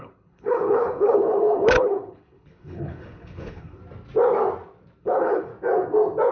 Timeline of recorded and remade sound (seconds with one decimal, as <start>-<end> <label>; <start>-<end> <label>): 0.0-3.8 remade; 3.8-5.0 recorded; 5.0-5.5 remade; 5.5-6.3 recorded